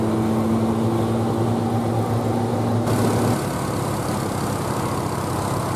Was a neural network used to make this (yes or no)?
no